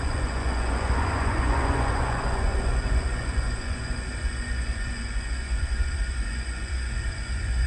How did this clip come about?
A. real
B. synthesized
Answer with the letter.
B